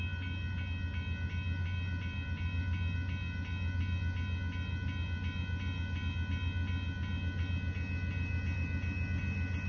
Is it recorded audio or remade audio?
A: recorded